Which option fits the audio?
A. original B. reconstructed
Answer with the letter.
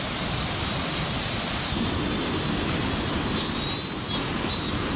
A